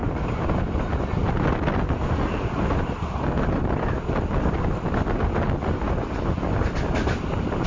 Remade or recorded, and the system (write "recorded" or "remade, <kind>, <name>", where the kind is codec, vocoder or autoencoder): recorded